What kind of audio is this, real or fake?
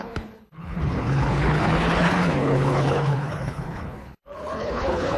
fake